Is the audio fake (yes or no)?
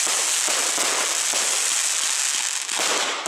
no